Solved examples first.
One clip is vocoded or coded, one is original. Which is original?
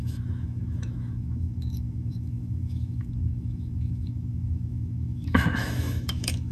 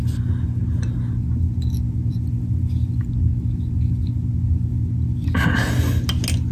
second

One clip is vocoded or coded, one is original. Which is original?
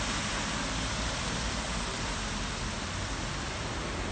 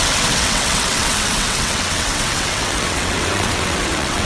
first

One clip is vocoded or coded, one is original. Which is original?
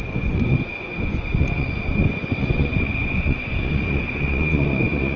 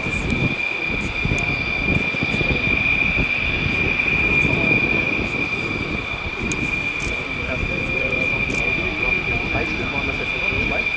second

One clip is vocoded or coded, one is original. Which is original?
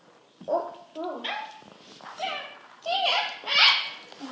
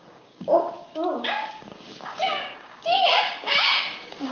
first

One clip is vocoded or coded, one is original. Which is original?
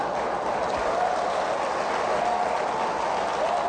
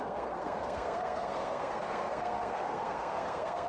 first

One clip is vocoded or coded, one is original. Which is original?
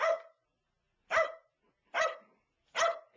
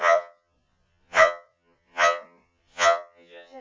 first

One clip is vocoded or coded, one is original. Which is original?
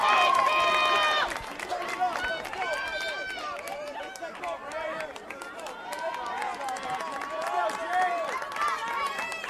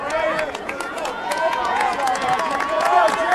first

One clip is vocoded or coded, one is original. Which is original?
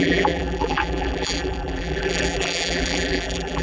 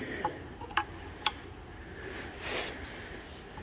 second